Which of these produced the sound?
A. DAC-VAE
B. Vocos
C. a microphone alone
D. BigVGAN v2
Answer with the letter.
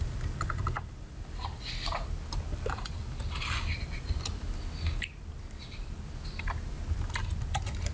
C